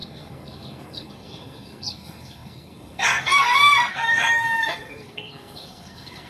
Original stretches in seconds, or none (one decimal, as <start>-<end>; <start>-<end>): none